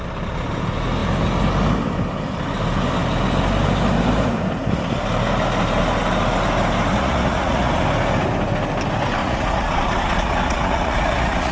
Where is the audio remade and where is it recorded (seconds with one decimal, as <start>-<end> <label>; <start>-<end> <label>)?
0.0-6.9 recorded; 6.9-7.7 remade; 7.7-9.2 recorded; 9.2-11.5 remade